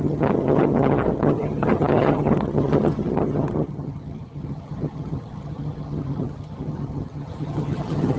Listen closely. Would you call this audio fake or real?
fake